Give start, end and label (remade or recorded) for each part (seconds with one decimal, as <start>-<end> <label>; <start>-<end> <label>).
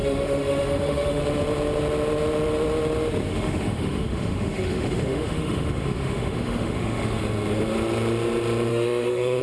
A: 0.0-1.2 remade; 1.2-3.3 recorded; 3.3-7.2 remade; 7.2-8.7 recorded; 8.7-9.4 remade